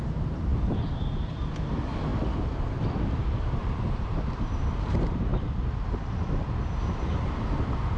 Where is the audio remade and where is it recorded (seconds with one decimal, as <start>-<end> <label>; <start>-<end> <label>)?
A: 0.0-2.1 remade; 2.1-3.0 recorded; 3.0-3.6 remade; 3.6-4.6 recorded; 4.6-5.3 remade; 5.3-8.0 recorded